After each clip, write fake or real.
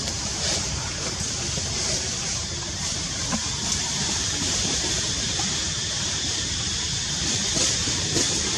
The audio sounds fake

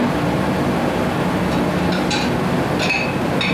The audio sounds real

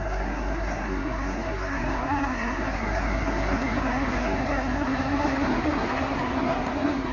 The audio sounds fake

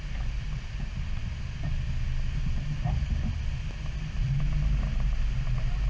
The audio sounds real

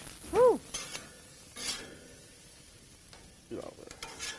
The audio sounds real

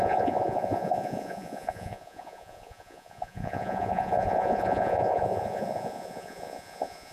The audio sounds fake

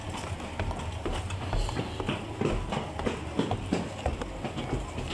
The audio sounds real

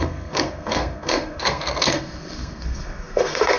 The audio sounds fake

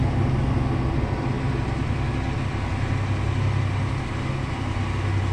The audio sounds real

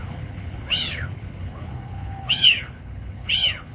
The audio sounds fake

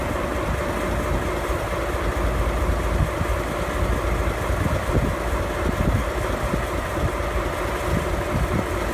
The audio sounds real